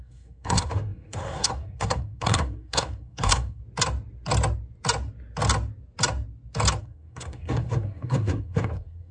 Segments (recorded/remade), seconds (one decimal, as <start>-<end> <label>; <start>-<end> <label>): 0.0-3.6 remade; 3.6-6.8 recorded; 6.8-9.1 remade